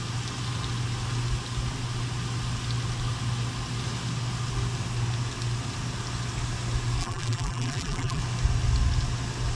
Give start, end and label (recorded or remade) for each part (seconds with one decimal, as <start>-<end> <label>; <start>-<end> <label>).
0.0-7.0 recorded; 7.0-8.2 remade; 8.2-9.5 recorded